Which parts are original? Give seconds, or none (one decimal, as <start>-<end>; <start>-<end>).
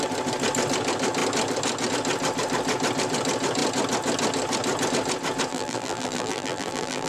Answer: 0.0-5.5